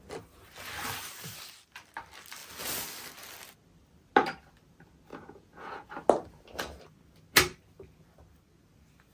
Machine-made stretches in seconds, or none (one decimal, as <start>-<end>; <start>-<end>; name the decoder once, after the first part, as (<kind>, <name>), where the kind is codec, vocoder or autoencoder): 5.1-5.9 (vocoder, Vocos)